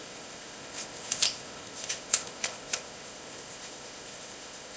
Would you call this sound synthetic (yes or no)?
yes